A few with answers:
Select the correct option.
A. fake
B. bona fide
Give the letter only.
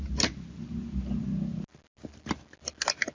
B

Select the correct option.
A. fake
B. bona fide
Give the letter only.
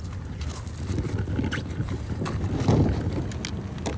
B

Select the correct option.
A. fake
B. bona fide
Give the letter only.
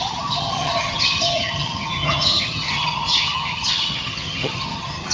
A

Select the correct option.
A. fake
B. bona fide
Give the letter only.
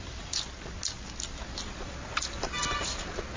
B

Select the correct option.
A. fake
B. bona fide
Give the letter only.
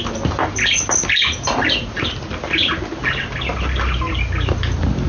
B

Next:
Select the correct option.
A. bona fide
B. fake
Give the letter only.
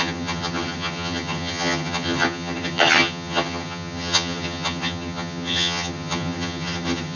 B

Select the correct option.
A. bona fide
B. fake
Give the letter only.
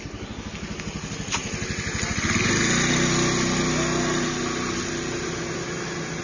A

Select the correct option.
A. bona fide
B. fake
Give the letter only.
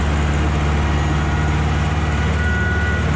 A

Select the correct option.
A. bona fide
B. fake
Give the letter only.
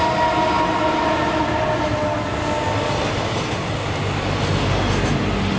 A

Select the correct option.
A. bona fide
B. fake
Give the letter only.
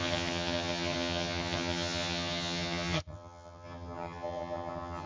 B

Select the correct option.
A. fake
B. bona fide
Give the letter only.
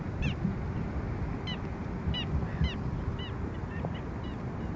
B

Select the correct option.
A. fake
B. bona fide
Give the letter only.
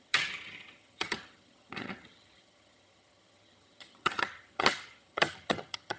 A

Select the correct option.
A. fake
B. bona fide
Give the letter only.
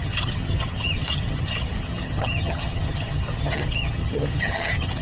A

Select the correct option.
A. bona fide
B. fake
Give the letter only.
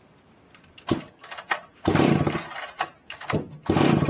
A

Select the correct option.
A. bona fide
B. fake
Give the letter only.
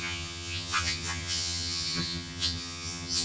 B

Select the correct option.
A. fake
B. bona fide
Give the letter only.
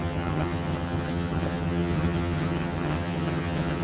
A